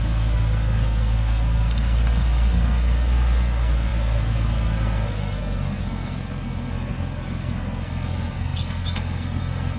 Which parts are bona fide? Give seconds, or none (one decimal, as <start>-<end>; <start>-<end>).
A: none